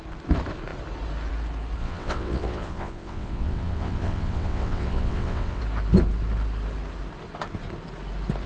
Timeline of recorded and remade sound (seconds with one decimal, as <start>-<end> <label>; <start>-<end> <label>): 0.0-1.8 recorded; 1.8-5.6 remade; 5.6-8.5 recorded